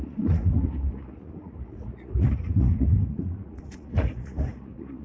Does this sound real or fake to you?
fake